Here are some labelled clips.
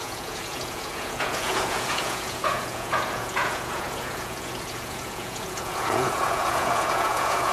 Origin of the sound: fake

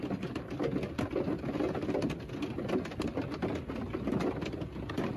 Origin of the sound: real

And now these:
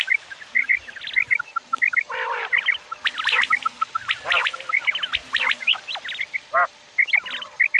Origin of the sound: real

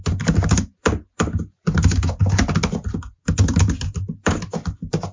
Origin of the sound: real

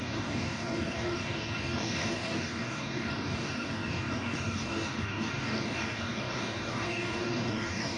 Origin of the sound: fake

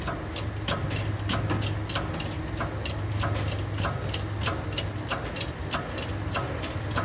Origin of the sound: real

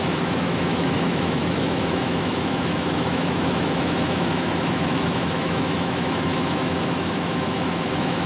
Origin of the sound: fake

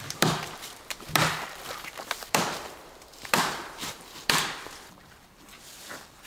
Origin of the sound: fake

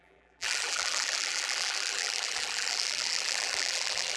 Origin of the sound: fake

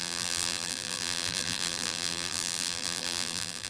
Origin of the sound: fake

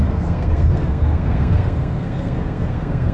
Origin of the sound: fake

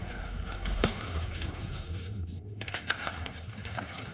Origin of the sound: fake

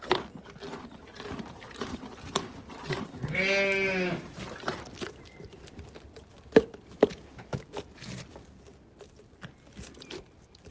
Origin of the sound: real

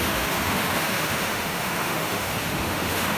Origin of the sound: fake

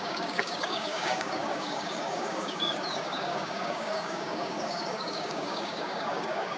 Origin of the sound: fake